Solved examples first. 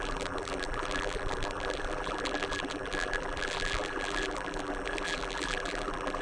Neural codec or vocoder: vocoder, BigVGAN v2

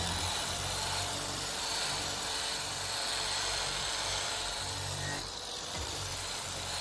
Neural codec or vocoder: vocoder, BigVGAN v2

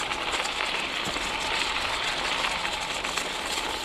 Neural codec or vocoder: none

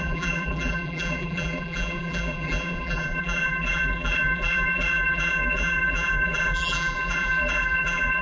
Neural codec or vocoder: vocoder, BigVGAN v2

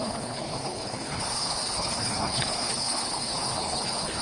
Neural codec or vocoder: codec, HILCodec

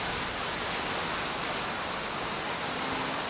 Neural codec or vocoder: none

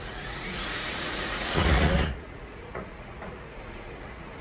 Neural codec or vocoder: vocoder, Vocos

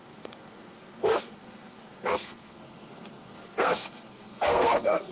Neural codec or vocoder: codec, SNAC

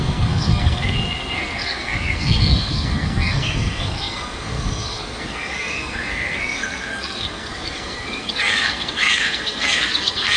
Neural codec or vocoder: codec, SNAC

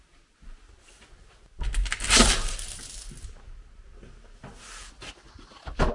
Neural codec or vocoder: none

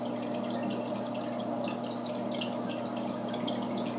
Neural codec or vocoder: none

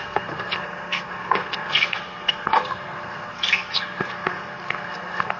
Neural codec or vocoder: codec, SNAC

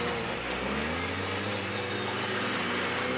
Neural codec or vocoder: none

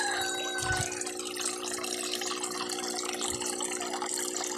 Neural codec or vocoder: none